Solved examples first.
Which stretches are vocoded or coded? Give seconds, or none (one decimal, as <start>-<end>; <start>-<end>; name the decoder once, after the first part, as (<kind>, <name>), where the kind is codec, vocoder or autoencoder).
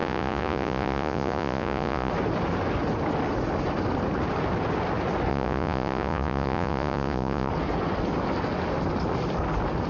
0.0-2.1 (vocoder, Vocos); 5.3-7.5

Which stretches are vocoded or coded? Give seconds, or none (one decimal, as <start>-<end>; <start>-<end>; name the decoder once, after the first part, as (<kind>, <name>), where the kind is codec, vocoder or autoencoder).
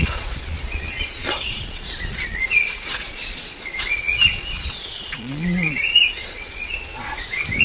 0.0-6.9 (vocoder, Vocos)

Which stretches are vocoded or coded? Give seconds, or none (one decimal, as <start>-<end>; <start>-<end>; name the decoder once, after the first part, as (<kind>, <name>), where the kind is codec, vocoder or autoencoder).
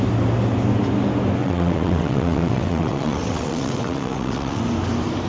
1.4-4.6 (vocoder, WaveNeXt)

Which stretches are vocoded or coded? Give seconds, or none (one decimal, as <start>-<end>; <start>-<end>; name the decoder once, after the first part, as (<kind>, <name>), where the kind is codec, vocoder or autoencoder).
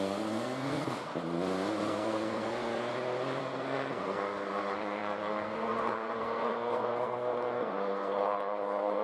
0.0-1.1 (codec, SNAC); 1.8-2.9; 3.4-9.0